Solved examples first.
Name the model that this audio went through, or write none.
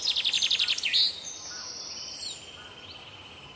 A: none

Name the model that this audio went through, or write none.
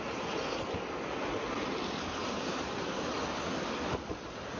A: none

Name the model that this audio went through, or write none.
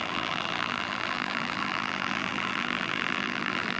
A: vocoder, BigVGAN v2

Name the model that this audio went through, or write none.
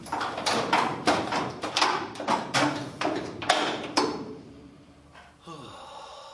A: vocoder, BigVGAN v2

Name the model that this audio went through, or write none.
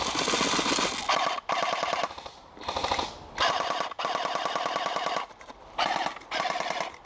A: none